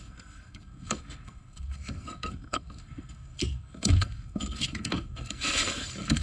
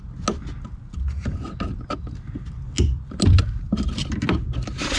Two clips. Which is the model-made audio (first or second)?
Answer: first